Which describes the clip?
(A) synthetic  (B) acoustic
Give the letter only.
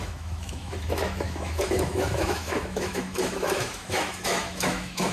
A